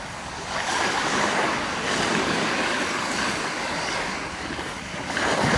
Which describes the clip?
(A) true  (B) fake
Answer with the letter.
B